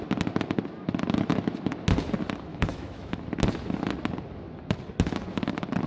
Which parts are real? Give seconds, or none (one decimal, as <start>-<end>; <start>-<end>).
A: 0.0-2.5; 3.2-5.9